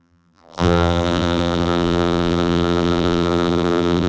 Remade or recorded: remade